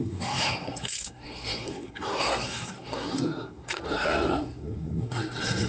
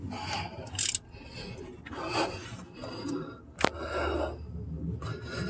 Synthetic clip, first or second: first